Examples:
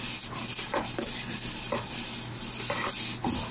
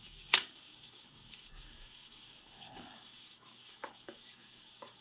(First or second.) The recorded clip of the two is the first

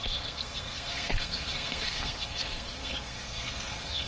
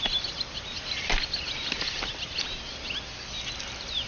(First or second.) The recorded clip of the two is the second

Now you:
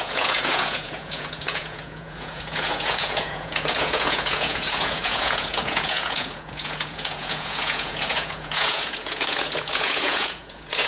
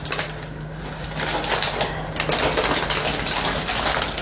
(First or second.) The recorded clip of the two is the second